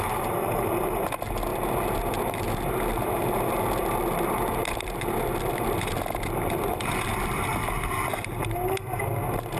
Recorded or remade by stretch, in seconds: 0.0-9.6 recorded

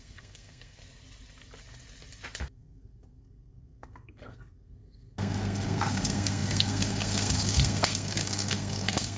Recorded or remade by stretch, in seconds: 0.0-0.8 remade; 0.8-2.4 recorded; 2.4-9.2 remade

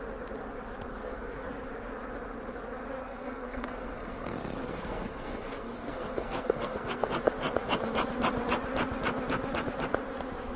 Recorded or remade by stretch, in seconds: 0.0-0.9 recorded; 0.9-1.5 remade; 1.5-3.0 recorded; 3.0-7.1 remade; 7.1-10.6 recorded

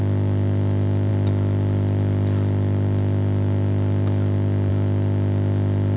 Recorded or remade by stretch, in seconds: 0.0-6.0 recorded

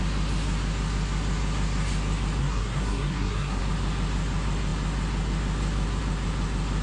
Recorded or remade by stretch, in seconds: 0.0-2.4 recorded; 2.4-3.6 remade; 3.6-6.8 recorded

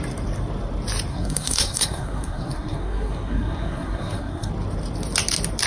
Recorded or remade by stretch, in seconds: 0.0-1.1 recorded; 1.1-4.5 remade; 4.5-5.7 recorded